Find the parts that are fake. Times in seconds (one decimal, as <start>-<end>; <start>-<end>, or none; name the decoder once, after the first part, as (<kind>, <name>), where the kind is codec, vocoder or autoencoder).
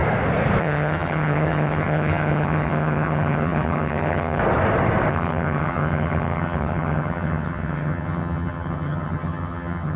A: 0.6-4.4 (vocoder, HiFi-GAN); 5.1-10.0